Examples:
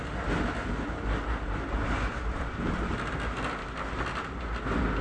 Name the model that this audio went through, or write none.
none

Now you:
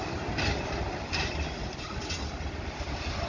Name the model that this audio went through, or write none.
none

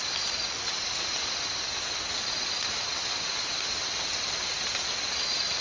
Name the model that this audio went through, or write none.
none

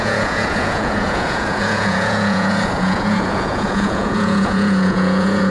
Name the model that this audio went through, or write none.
vocoder, Vocos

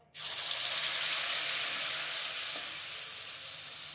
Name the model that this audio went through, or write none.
none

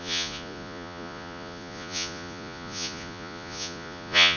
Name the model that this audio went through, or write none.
vocoder, Vocos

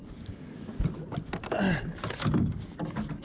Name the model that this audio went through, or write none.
none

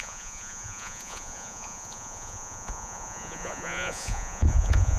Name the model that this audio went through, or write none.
vocoder, Vocos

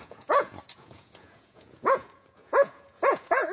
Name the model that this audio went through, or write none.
vocoder, Vocos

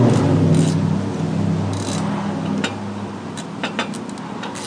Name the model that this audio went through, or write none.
none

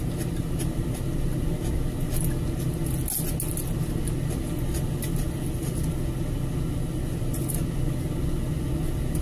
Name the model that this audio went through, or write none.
none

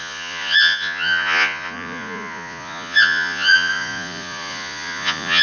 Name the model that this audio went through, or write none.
vocoder, Vocos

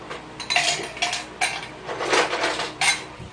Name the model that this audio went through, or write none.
none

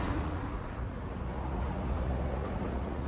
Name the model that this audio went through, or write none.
vocoder, Vocos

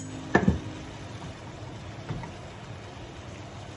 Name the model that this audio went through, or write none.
none